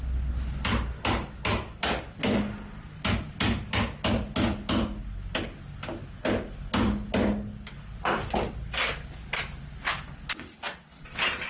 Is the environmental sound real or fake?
real